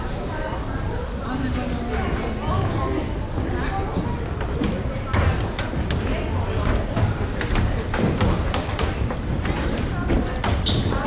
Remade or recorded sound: recorded